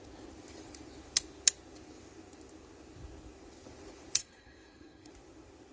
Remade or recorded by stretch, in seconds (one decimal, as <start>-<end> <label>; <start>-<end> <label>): 0.0-4.2 recorded; 4.2-5.1 remade; 5.1-5.7 recorded